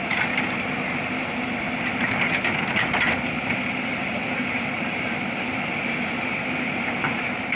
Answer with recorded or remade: recorded